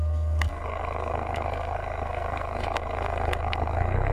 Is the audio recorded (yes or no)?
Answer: no